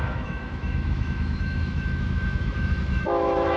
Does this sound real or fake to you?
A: fake